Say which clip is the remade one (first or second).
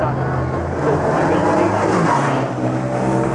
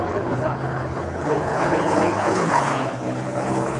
second